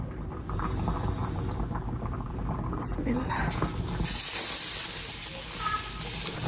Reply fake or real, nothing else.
real